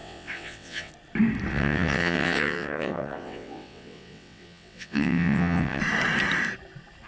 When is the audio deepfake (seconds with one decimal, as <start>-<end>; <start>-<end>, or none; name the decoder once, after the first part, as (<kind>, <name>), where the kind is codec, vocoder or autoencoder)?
0.0-0.9 (vocoder, WaveNeXt); 1.5-5.8